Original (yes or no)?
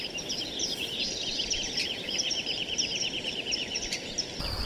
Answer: no